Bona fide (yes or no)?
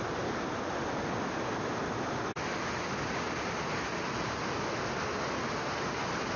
yes